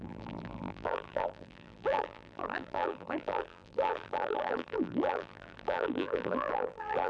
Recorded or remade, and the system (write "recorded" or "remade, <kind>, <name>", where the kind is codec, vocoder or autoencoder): remade, vocoder, BigVGAN v2